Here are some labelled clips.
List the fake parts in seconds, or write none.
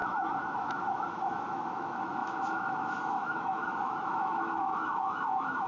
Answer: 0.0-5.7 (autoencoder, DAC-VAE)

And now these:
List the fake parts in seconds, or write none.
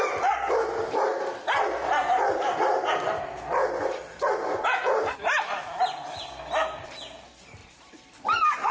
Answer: none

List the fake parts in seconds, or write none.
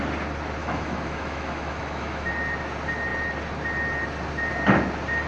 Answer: 0.6-2.3 (autoencoder, DAC-VAE)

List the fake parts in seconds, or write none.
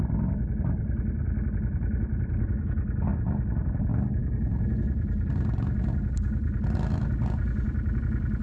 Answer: none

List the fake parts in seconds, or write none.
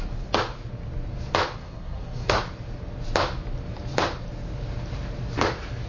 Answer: 1.6-2.4 (codec, SNAC)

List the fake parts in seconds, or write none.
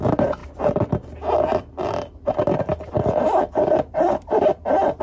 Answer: 2.7-4.4 (vocoder, BigVGAN v2)